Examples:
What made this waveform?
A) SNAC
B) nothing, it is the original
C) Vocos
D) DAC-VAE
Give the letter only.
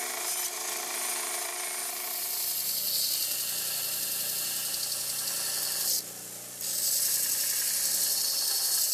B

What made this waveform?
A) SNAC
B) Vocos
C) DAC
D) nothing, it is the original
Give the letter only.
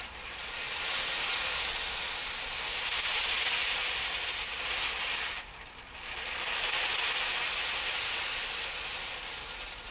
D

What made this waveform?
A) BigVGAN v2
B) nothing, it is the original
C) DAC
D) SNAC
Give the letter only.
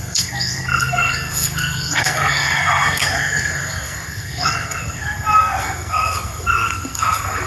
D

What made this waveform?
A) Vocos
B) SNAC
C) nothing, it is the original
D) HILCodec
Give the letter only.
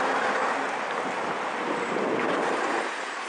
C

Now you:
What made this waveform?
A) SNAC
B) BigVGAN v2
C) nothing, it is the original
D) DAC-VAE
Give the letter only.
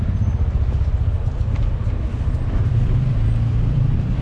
C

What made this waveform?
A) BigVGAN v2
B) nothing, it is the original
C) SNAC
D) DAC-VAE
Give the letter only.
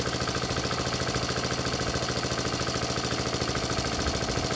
B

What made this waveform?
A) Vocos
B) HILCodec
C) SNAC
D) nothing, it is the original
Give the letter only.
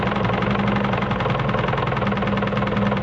D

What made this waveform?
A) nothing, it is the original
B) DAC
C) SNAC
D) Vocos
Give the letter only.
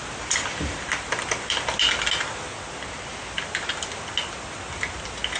A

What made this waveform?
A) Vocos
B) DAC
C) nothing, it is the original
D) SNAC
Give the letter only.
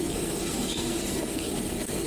D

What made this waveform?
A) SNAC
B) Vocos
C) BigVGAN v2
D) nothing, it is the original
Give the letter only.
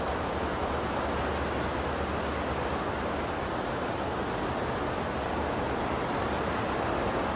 D